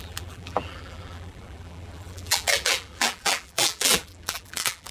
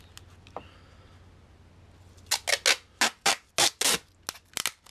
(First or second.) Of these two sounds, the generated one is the first